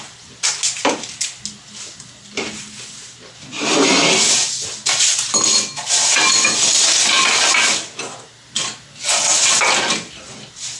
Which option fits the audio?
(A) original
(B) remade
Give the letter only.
A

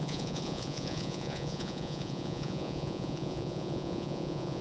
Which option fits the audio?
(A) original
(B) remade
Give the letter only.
B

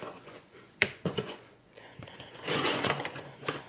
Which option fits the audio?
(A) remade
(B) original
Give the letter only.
A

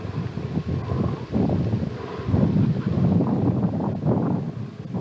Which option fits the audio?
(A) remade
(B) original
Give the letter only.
B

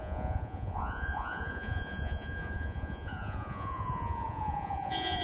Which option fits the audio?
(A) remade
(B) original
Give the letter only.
A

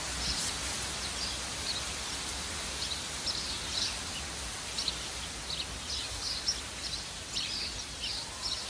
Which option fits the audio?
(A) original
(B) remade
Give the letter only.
A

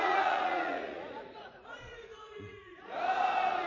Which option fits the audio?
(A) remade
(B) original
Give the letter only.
A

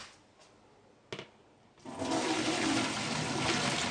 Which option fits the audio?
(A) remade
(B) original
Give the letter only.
B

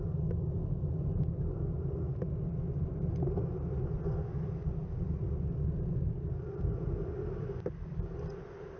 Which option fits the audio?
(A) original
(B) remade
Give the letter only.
A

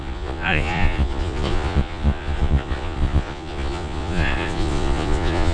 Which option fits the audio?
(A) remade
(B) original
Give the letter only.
A